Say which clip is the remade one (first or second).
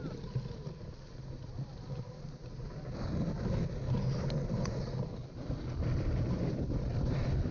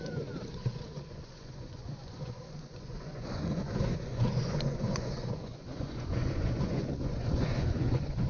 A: second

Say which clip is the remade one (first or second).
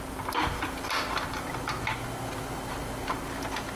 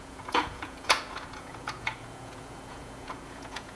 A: second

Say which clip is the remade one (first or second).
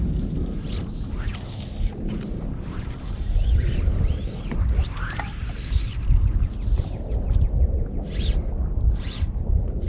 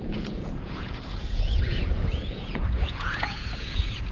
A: second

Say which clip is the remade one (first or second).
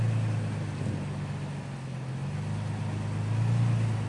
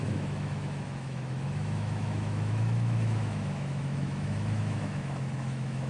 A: second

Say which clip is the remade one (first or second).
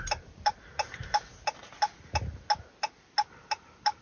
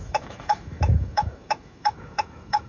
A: second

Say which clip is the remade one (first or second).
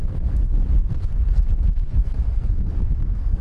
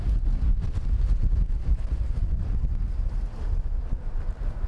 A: first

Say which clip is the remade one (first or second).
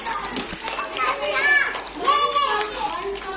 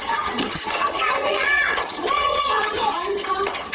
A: second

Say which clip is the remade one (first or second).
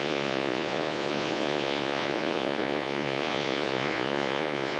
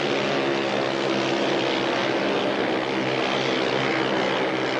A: first